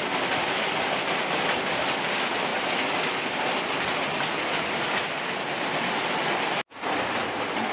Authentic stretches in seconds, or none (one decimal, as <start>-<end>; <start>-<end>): 0.0-7.7